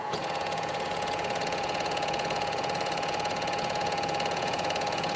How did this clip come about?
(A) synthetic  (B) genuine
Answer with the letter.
A